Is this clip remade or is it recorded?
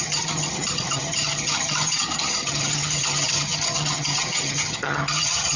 remade